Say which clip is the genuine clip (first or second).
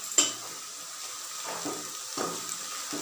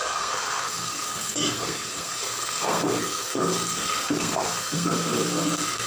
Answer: first